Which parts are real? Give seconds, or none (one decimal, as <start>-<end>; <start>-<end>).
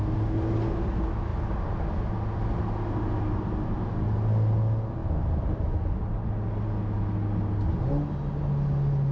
0.0-9.1